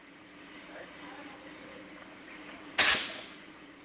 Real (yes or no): no